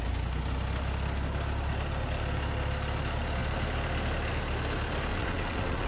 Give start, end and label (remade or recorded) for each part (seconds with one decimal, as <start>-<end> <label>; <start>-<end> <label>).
0.0-5.1 recorded; 5.1-5.9 remade